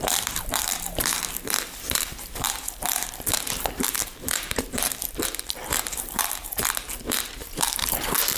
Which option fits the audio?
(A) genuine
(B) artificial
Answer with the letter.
B